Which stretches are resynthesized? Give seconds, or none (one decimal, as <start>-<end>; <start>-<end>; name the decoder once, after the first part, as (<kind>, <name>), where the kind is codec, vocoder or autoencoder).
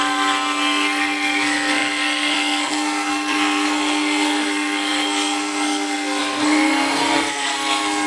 0.0-8.1 (codec, SNAC)